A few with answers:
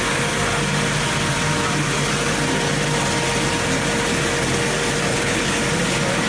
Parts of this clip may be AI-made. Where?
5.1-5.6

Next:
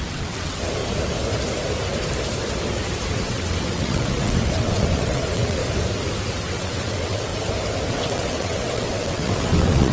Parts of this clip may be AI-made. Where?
0.0-0.8; 3.1-5.6; 6.4-7.3; 7.9-9.9

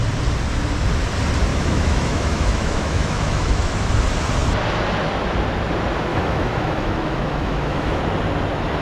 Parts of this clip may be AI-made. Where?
1.5-3.9; 6.1-8.0

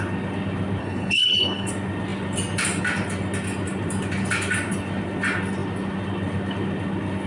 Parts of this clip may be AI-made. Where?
0.8-1.7

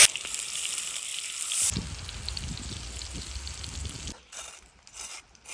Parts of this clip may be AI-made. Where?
none

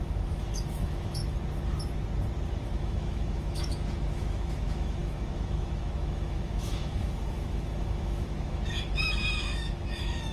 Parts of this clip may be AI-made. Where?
0.0-1.2; 2.5-10.3

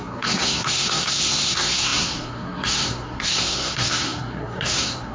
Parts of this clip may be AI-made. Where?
0.0-5.1

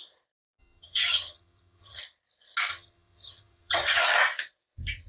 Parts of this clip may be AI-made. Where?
0.6-2.0; 2.7-4.0